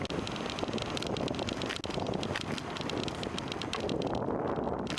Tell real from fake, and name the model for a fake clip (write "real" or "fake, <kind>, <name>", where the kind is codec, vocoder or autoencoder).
real